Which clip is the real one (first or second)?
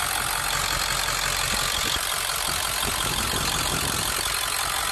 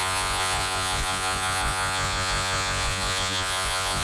first